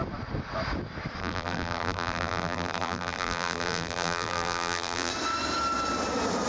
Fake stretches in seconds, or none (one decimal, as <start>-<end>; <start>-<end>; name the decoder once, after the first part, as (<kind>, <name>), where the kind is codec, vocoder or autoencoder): 1.2-5.1 (vocoder, BigVGAN v2)